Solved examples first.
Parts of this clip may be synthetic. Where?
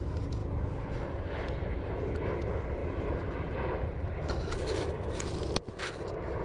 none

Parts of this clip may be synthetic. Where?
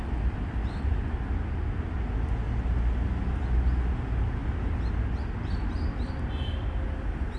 none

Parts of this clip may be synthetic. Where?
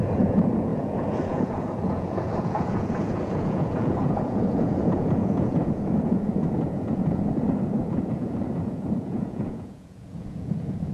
0.0-10.9 (vocoder, Vocos)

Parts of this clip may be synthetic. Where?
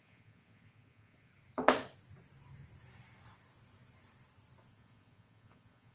0.0-1.3 (vocoder, Vocos); 4.7-5.9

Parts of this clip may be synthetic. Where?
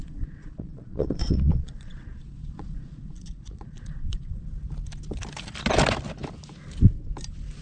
0.0-4.4 (vocoder, Vocos)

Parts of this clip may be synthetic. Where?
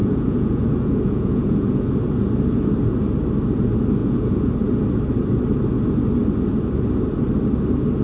0.0-1.9 (vocoder, Vocos); 4.0-4.5